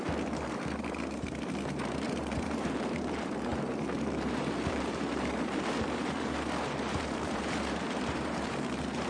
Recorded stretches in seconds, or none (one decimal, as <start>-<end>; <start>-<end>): none